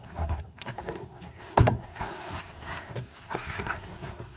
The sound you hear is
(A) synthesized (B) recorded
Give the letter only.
A